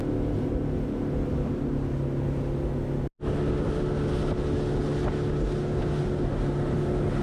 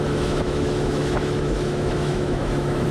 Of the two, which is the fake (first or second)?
second